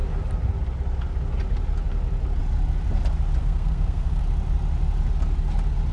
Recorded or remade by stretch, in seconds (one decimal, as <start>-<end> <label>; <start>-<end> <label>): 0.0-3.4 recorded; 3.4-4.2 remade; 4.2-5.9 recorded